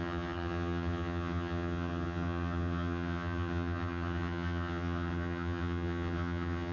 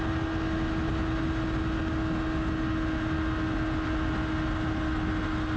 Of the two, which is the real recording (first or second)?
second